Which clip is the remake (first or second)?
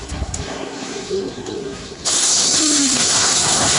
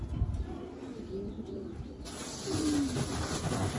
first